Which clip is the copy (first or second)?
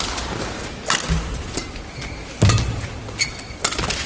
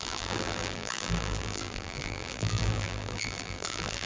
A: second